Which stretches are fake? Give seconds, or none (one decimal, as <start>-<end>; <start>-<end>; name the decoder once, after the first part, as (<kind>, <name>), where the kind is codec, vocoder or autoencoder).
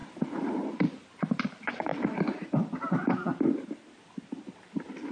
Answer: 0.6-1.9 (vocoder, BigVGAN v2)